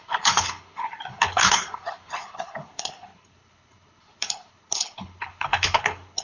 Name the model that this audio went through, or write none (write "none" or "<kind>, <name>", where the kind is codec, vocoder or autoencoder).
codec, HILCodec